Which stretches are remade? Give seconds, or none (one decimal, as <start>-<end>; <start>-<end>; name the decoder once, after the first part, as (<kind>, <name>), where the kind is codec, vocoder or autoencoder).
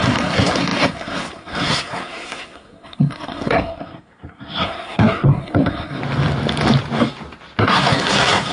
0.0-6.0 (codec, SNAC); 7.6-8.5